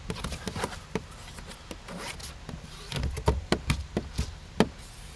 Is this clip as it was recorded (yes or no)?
yes